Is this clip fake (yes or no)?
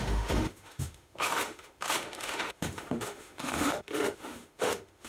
yes